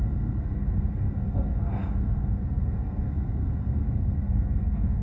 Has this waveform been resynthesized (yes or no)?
yes